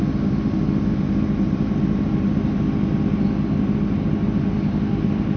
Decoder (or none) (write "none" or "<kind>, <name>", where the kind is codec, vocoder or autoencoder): none